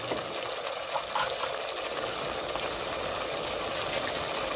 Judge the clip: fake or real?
real